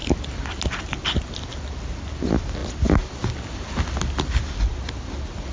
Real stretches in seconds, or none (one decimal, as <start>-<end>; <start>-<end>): 0.0-5.5